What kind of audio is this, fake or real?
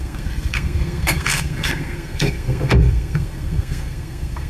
fake